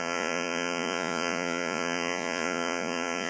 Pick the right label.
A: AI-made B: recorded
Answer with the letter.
A